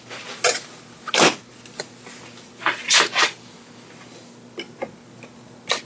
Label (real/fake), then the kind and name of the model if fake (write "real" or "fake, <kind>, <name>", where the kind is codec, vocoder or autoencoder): real